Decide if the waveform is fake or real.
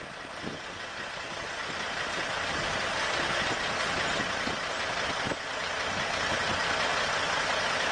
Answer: real